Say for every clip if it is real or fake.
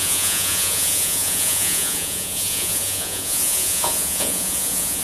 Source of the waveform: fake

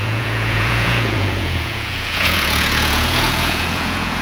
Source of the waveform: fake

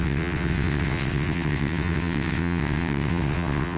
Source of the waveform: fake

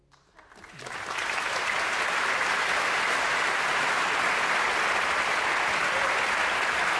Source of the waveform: real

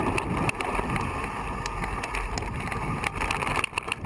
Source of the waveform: real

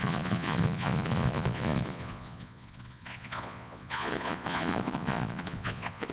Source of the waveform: fake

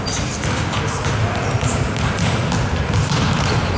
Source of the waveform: real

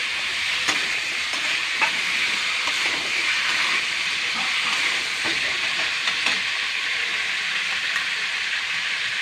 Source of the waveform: fake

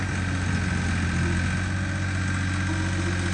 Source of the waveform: real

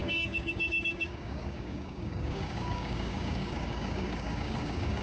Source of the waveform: fake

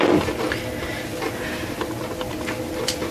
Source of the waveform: real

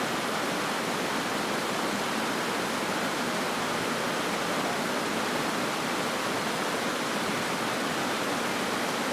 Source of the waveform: real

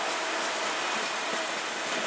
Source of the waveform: real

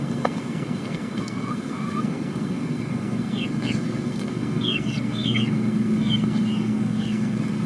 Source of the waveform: fake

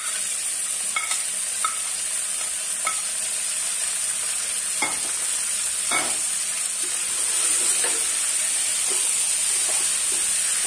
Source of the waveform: real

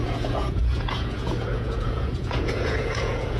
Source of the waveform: fake